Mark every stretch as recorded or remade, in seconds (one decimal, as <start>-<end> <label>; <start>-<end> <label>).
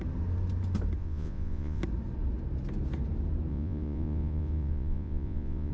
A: 0.0-1.0 recorded; 1.0-1.8 remade; 1.8-3.5 recorded; 3.5-5.7 remade